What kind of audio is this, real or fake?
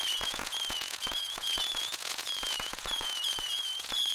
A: fake